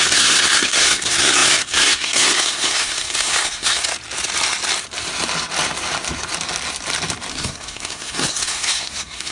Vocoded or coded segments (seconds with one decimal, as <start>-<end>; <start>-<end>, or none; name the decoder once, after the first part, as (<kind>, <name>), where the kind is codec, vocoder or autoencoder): 0.0-3.9 (codec, SNAC); 7.3-9.3